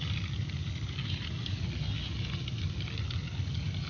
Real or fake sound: real